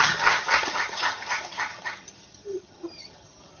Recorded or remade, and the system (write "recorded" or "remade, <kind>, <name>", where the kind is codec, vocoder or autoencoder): remade, vocoder, HiFi-GAN